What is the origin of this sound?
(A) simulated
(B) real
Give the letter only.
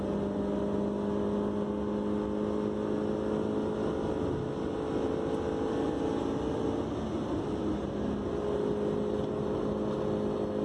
B